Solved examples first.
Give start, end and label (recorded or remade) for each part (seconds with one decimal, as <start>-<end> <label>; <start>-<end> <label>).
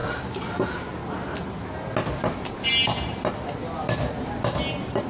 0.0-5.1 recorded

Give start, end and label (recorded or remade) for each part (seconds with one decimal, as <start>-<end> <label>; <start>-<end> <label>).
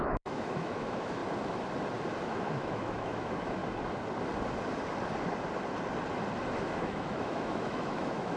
0.0-1.2 remade; 1.2-2.2 recorded; 2.2-3.6 remade; 3.6-6.8 recorded; 6.8-8.4 remade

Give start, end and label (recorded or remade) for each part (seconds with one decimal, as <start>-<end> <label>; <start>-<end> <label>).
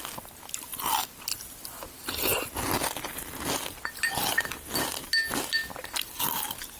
0.0-6.8 recorded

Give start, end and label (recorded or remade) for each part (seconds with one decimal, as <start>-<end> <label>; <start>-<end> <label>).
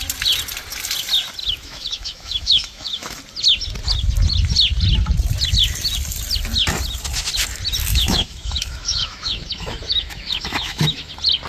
0.0-1.4 recorded; 1.4-3.2 remade; 3.2-7.9 recorded; 7.9-11.1 remade; 11.1-11.5 recorded